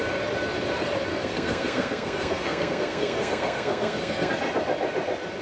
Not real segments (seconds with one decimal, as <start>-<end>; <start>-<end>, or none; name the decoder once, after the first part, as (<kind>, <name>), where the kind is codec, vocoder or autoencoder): 1.1-4.3 (codec, SNAC)